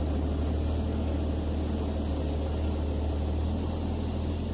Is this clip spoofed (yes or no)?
no